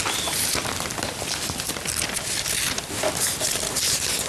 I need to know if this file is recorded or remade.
recorded